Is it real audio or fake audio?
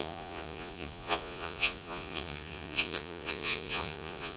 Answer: fake